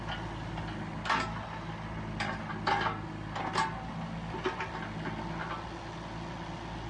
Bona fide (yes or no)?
yes